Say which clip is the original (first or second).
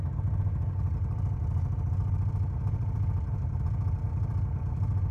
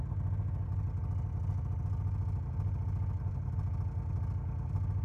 second